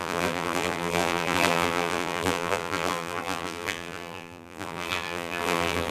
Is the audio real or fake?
fake